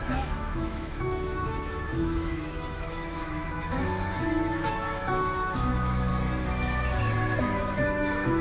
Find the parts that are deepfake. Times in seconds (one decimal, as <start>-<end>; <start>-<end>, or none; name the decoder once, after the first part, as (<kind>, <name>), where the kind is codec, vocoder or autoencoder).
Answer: 0.0-6.1 (autoencoder, DAC-VAE); 7.4-8.4